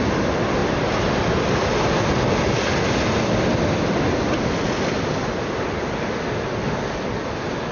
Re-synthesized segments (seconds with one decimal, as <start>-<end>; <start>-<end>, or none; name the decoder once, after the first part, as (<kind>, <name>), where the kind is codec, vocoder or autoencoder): none